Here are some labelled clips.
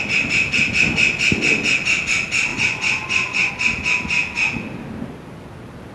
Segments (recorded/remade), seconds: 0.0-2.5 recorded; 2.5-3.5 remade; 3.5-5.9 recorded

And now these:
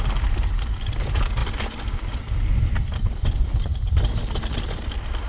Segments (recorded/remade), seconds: 0.0-5.3 recorded

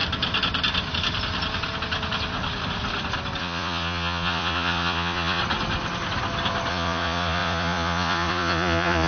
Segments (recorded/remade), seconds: 0.0-3.4 recorded; 3.4-5.4 remade; 5.4-6.7 recorded; 6.7-9.1 remade

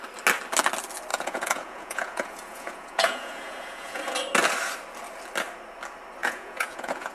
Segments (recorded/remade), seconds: 0.0-1.1 recorded; 1.1-4.0 remade; 4.0-6.2 recorded; 6.2-7.1 remade